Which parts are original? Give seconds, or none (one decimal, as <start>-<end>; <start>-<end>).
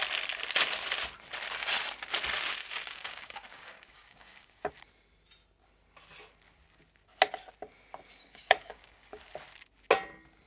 0.0-2.6; 4.7-8.2; 9.2-10.5